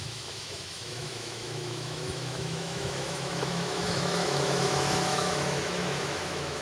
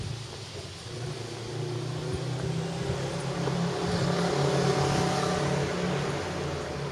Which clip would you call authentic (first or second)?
second